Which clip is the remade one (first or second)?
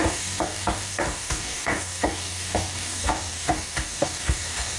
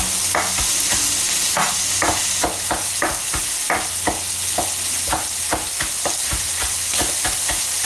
first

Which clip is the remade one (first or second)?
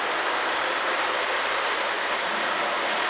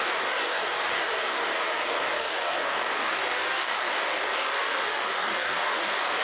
second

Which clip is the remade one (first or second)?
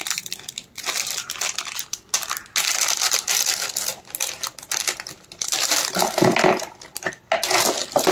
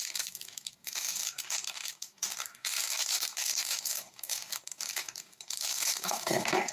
second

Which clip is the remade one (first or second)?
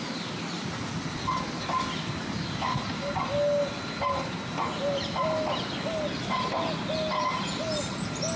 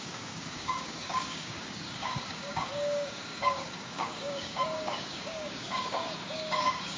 second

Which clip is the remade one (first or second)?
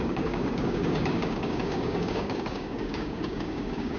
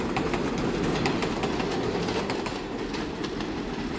first